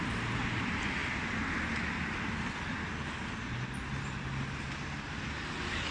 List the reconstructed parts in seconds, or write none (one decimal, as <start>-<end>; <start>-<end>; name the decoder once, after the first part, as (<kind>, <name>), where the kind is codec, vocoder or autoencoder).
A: none